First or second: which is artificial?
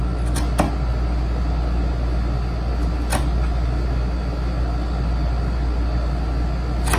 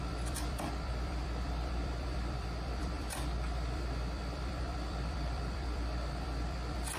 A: second